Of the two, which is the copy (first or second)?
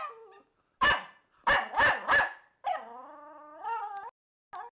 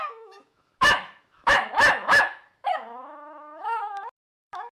second